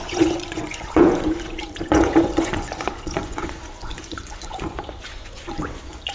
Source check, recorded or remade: remade